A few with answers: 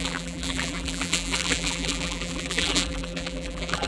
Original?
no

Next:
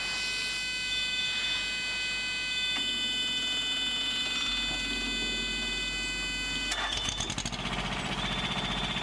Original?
yes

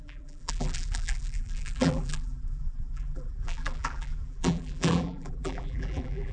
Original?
no